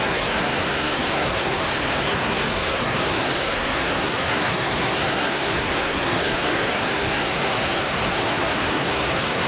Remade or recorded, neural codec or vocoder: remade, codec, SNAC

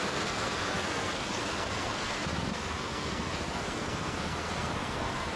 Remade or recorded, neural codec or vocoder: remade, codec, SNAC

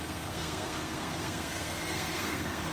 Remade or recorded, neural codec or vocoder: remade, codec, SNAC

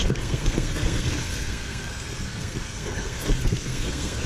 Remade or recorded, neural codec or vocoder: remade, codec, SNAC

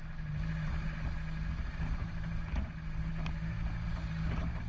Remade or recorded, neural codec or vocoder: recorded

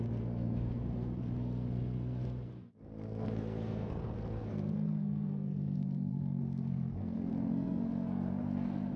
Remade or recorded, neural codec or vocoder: remade, codec, SNAC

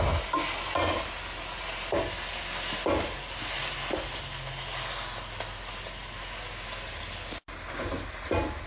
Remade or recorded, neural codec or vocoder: recorded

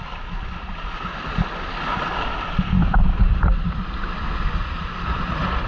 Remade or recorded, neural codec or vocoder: recorded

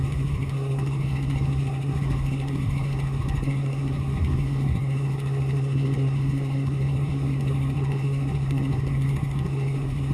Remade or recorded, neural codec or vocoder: remade, codec, SNAC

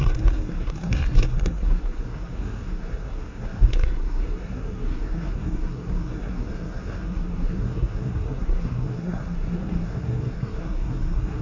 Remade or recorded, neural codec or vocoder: remade, codec, SNAC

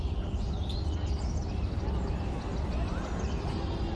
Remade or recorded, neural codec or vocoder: recorded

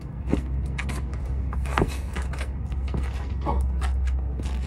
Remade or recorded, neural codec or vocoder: remade, codec, SNAC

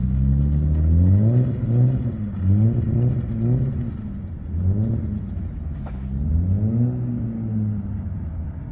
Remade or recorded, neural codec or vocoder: recorded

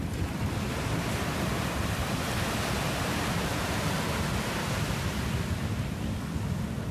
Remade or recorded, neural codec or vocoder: recorded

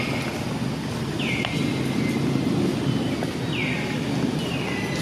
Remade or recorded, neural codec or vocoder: recorded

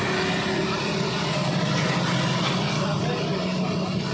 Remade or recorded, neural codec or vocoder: recorded